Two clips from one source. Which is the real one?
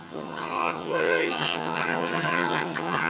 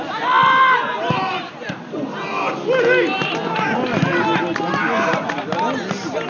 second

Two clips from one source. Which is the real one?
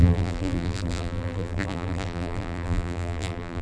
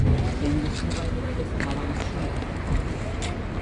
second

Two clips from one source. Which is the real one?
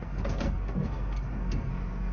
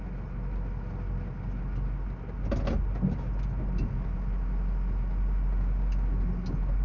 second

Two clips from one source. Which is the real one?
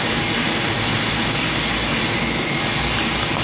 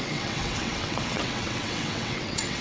first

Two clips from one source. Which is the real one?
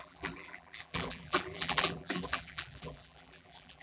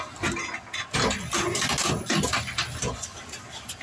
second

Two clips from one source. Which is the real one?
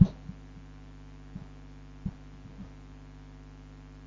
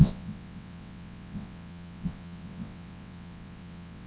first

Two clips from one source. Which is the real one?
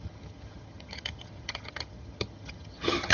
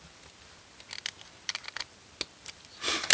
second